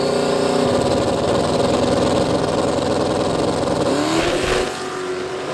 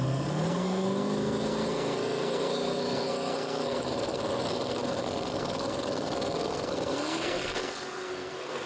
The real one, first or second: first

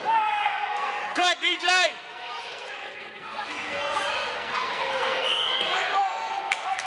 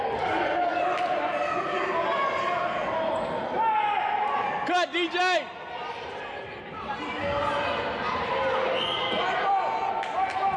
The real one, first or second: second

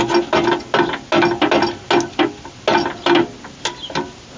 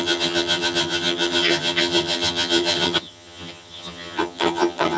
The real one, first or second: first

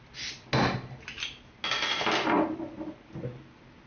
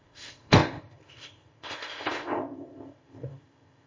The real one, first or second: first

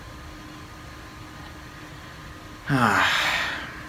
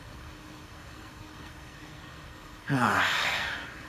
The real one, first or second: first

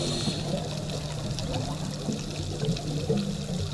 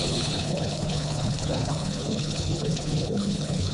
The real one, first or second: first